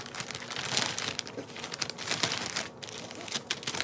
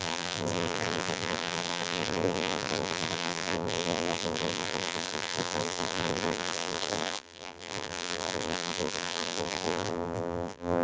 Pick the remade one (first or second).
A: second